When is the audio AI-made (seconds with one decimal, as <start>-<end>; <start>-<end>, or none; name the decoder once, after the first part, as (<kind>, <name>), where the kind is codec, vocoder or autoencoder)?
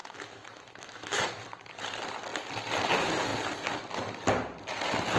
0.0-1.3 (autoencoder, DAC-VAE)